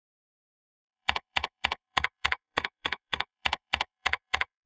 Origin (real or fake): fake